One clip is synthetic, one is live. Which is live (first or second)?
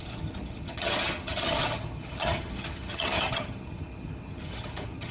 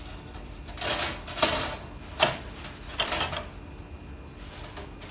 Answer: second